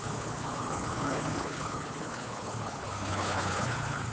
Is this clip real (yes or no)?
no